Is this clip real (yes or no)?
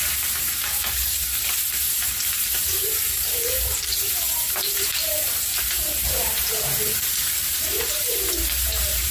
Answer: no